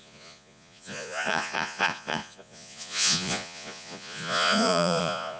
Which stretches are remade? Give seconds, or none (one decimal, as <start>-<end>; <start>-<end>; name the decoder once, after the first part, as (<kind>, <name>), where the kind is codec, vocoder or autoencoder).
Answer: 0.0-5.4 (vocoder, Vocos)